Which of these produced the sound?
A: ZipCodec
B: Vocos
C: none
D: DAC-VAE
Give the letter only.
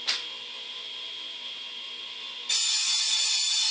C